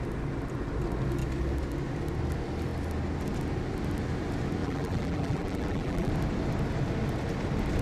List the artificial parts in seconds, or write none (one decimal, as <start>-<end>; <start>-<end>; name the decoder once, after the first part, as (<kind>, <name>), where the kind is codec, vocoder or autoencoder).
4.6-6.1 (vocoder, BigVGAN v2)